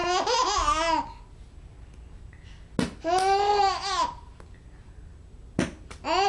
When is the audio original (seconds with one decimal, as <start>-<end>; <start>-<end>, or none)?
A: 0.0-6.3